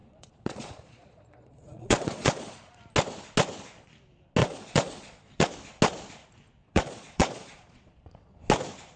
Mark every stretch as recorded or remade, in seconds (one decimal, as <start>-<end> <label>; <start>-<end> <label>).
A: 0.0-2.8 remade; 2.8-4.4 recorded; 4.4-5.5 remade; 5.5-6.6 recorded; 6.6-8.4 remade; 8.4-9.0 recorded